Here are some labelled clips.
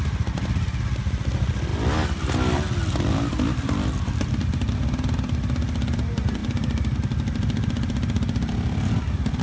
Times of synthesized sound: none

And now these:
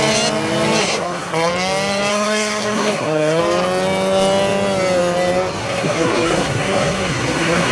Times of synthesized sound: 0.8-1.5 (codec, SNAC); 2.1-3.4; 5.6-7.7

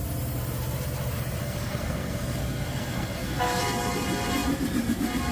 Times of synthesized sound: 1.4-3.6 (codec, SNAC)